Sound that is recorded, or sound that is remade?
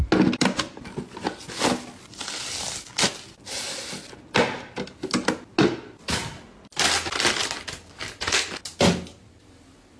recorded